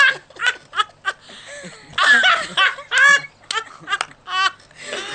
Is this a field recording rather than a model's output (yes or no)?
yes